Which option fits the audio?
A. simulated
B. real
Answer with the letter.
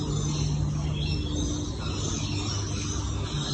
B